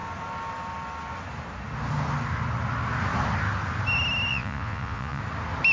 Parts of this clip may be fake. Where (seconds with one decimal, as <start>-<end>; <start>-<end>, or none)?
4.3-5.2